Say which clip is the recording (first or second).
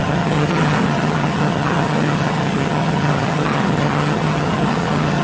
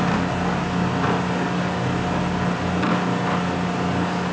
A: second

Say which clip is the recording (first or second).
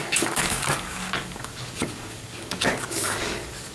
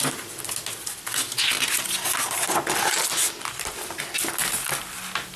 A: second